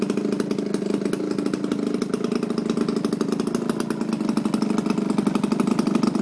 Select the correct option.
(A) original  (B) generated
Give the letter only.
A